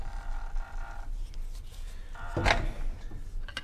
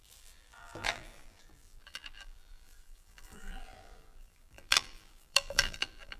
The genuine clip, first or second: first